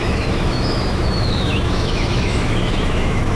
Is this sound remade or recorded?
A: remade